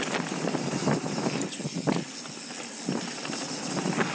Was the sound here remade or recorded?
recorded